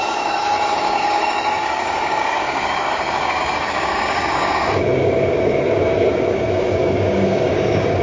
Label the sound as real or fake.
fake